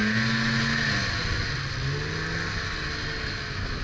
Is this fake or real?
real